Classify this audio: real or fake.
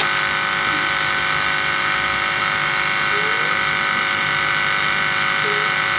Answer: real